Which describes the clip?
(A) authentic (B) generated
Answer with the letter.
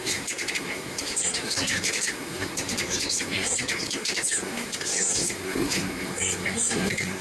B